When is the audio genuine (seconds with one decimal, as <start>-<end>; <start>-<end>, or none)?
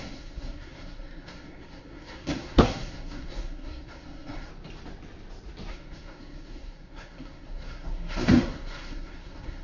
4.5-5.7